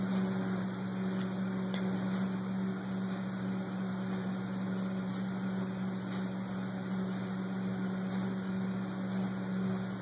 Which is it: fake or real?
real